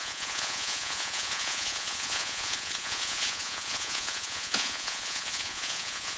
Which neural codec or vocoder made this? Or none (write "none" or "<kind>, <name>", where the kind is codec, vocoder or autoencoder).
vocoder, Vocos